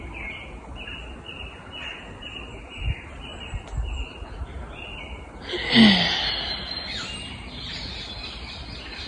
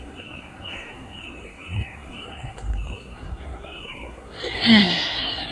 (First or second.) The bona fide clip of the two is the first